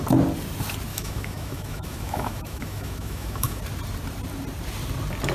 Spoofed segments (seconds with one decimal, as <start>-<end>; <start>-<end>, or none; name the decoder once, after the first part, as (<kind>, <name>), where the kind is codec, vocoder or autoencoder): 0.9-3.6 (autoencoder, DAC-VAE)

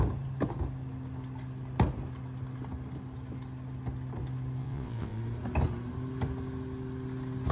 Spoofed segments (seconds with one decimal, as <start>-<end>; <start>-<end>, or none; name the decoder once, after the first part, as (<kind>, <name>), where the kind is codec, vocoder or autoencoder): 4.6-5.2 (vocoder, WaveNeXt)